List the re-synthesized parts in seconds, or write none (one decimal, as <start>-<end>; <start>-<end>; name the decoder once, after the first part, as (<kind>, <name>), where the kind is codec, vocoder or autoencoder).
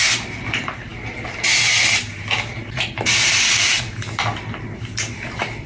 2.6-3.8 (vocoder, BigVGAN v2)